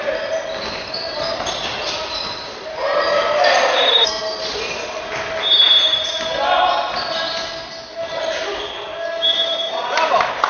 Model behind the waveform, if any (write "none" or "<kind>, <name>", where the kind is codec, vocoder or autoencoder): none